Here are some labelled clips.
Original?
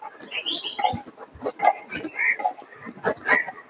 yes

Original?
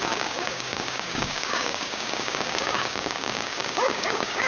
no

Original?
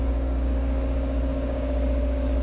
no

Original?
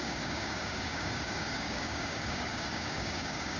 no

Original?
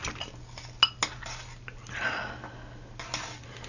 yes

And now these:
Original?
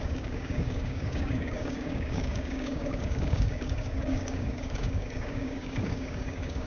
no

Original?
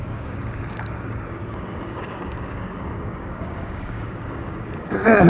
no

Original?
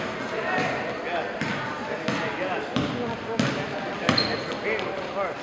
yes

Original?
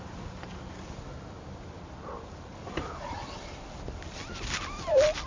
yes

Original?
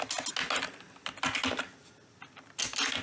yes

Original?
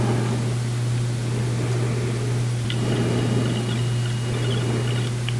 yes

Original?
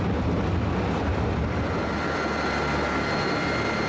yes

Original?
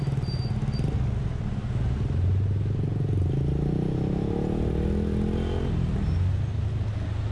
yes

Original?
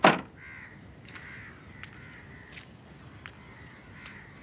yes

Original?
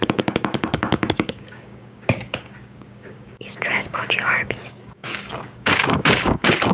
no